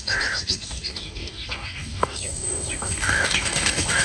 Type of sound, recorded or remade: remade